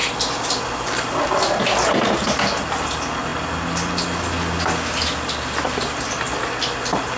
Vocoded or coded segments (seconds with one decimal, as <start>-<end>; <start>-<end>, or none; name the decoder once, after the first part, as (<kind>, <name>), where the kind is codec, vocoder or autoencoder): none